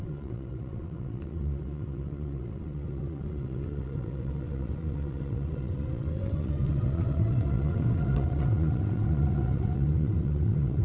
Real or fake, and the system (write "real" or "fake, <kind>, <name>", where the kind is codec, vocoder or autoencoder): fake, vocoder, WaveNeXt